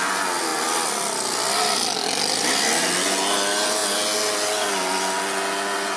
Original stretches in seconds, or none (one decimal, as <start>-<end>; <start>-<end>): 0.0-6.0